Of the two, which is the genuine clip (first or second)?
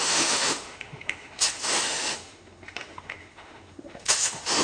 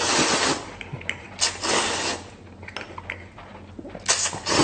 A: second